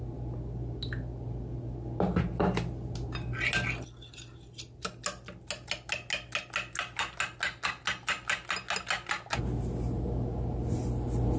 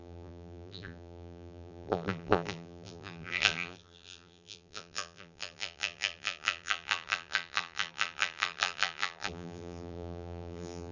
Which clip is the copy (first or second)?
second